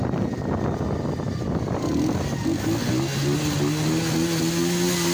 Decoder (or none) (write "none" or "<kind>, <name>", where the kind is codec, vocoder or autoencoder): none